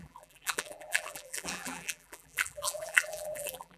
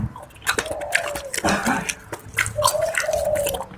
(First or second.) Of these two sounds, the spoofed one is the first